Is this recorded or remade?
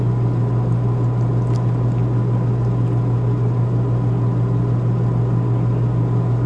recorded